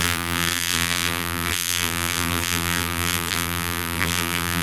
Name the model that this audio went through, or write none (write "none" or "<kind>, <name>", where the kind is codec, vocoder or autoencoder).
vocoder, BigVGAN v2